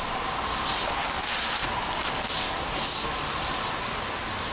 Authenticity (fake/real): real